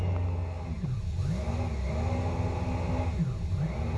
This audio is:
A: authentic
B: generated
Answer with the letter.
A